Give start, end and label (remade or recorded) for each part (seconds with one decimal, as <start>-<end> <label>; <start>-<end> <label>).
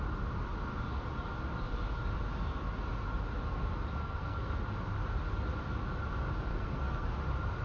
0.0-4.0 recorded; 4.0-4.5 remade; 4.5-6.5 recorded; 6.5-7.1 remade; 7.1-7.6 recorded